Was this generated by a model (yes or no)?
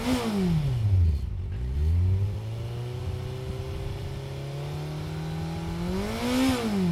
no